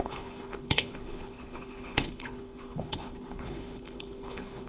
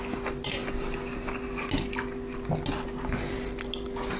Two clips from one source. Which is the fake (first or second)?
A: first